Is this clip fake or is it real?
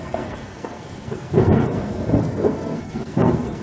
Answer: fake